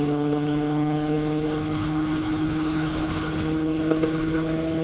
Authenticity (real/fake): fake